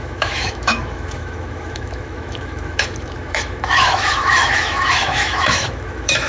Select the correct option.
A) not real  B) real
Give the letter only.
A